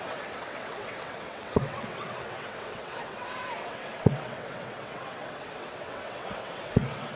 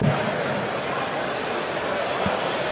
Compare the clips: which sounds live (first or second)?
second